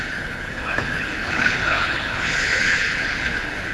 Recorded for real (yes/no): no